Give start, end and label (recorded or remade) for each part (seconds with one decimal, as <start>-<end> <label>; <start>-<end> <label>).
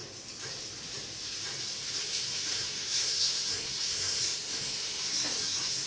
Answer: 0.0-2.0 recorded; 2.0-5.9 remade